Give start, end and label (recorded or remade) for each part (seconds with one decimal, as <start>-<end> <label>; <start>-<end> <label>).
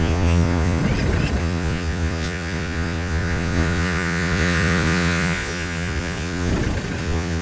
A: 0.0-0.8 remade; 0.8-1.4 recorded; 1.4-6.5 remade; 6.5-7.0 recorded; 7.0-7.4 remade